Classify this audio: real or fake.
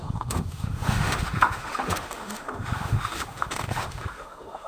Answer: fake